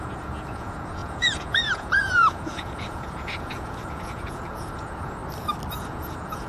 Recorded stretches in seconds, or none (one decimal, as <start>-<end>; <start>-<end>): 5.2-5.7